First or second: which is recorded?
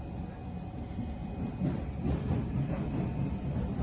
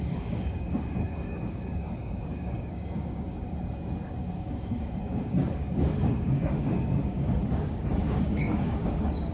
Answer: first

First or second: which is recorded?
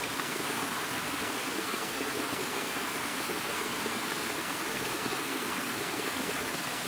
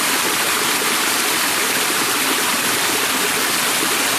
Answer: second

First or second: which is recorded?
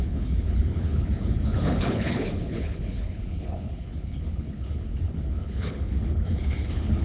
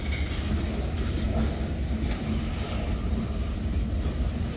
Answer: second